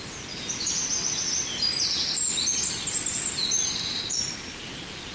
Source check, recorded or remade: recorded